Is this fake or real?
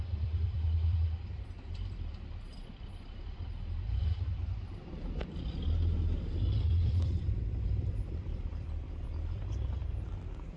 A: fake